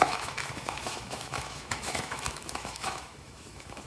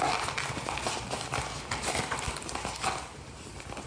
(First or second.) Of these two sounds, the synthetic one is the first